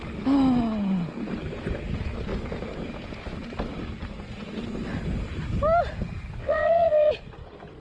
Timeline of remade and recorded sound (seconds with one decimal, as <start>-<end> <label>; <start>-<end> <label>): 0.0-6.4 recorded; 6.4-7.1 remade; 7.1-7.8 recorded